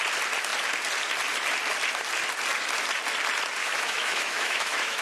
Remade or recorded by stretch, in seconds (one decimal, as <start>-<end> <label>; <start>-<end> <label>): 0.0-3.6 recorded; 3.6-5.0 remade